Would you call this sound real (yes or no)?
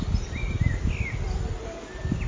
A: yes